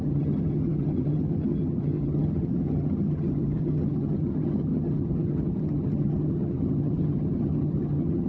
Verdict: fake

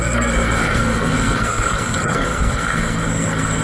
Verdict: fake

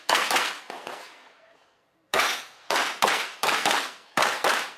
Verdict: fake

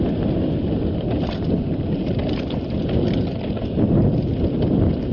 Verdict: real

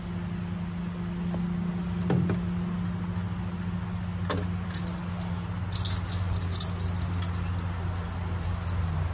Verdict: real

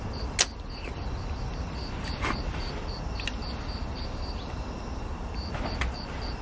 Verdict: real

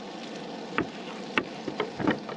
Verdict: real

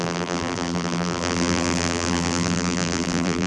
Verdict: fake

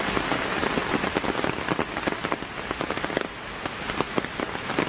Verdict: real